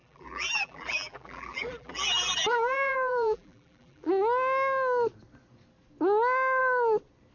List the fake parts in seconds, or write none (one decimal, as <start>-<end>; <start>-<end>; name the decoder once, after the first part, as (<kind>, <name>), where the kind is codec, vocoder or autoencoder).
0.0-4.1 (vocoder, BigVGAN v2)